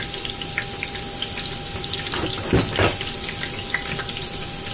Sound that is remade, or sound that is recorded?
recorded